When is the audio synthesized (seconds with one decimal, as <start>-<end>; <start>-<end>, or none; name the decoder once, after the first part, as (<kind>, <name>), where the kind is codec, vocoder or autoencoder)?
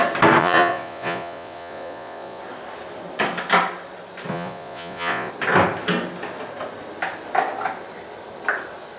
0.4-2.4 (vocoder, Vocos); 4.3-5.3